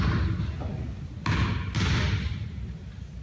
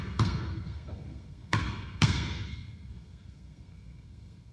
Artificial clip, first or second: second